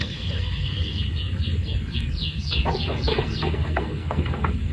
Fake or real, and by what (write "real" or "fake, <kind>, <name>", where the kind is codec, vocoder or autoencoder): fake, codec, SNAC